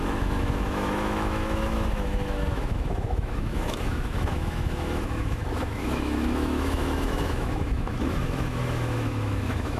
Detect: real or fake fake